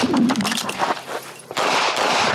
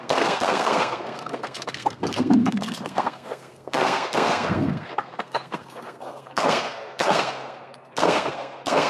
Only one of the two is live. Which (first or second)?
first